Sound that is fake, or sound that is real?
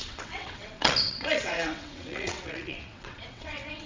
fake